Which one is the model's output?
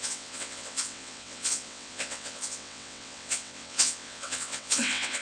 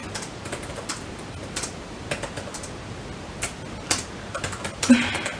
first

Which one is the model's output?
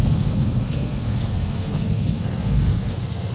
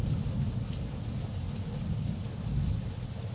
first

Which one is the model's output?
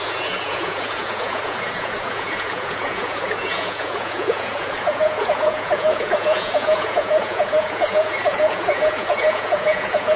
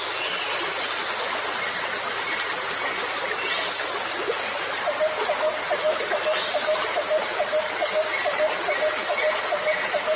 first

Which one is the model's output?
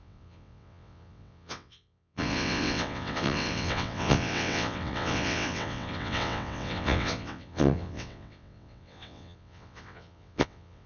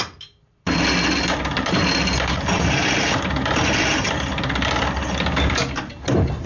first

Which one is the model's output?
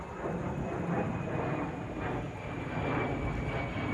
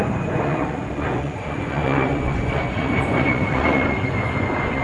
second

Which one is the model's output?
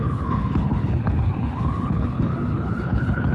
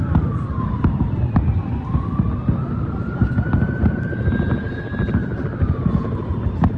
first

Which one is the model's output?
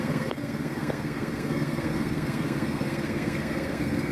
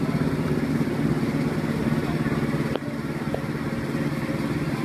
first